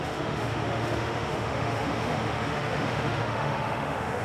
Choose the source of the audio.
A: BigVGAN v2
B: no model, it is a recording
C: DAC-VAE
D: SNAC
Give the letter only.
C